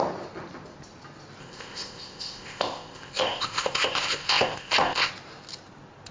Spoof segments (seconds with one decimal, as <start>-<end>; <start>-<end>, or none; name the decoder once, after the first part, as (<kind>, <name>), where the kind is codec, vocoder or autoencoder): 1.4-5.1 (codec, ZipCodec)